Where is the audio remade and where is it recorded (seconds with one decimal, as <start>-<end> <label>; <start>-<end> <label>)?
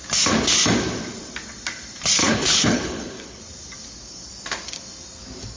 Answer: 0.0-2.2 recorded; 2.2-3.4 remade; 3.4-5.6 recorded